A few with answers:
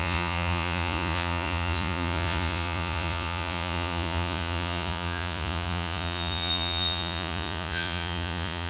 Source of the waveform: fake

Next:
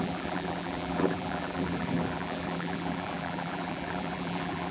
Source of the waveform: fake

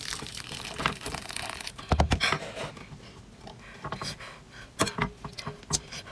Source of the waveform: real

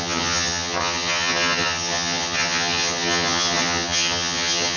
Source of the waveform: fake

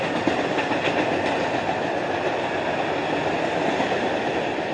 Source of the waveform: real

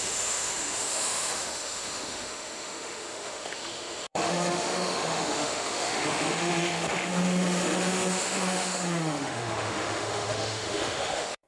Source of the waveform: fake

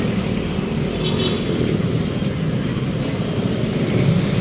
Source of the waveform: real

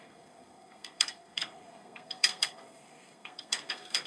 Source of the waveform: fake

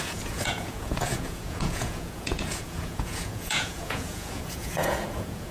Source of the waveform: fake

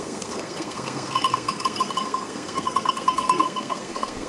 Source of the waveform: fake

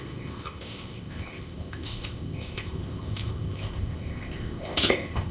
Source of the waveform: fake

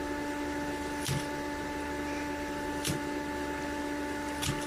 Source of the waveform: fake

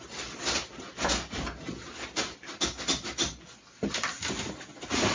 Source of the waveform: real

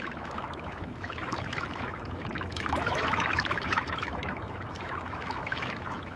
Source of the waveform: fake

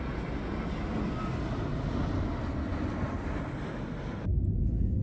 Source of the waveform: real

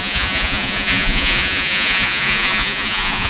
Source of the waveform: fake